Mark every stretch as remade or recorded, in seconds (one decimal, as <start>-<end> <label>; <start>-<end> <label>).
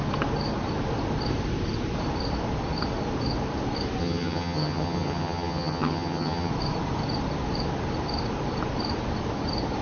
0.0-4.0 recorded; 4.0-6.5 remade; 6.5-9.8 recorded